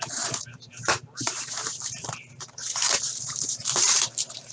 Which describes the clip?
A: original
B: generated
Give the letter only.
B